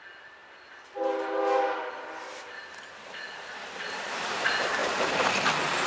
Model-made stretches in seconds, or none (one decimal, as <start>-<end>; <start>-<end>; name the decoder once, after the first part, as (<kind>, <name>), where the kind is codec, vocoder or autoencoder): 4.8-5.3 (vocoder, BigVGAN v2)